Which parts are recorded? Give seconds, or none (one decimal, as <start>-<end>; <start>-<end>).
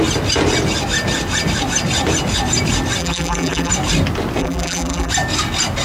0.0-3.0; 3.7-4.4; 5.1-5.8